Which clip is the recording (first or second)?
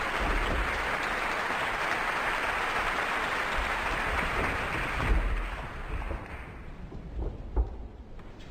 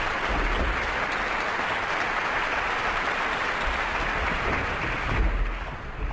second